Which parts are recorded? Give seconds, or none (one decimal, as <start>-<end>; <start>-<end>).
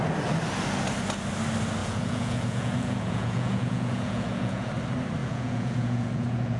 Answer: 0.0-1.8; 4.7-5.2